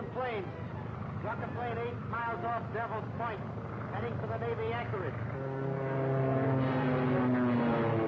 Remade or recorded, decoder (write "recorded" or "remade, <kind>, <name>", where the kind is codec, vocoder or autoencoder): recorded